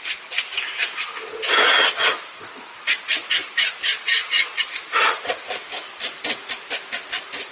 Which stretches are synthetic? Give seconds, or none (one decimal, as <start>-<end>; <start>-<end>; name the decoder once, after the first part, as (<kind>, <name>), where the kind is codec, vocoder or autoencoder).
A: none